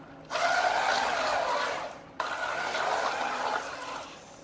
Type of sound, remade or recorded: recorded